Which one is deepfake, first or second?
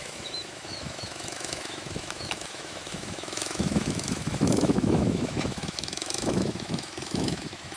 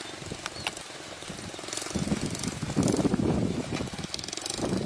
first